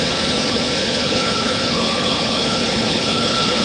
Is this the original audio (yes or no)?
no